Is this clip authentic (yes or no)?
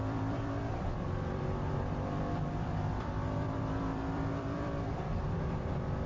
no